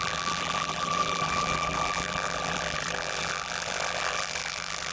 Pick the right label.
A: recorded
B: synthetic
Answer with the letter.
B